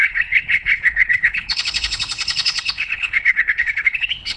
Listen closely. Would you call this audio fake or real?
fake